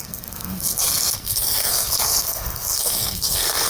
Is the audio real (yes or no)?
no